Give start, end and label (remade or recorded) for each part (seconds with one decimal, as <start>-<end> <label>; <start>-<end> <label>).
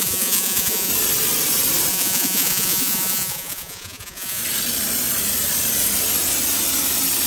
0.0-0.9 remade; 0.9-1.9 recorded; 1.9-4.4 remade; 4.4-7.3 recorded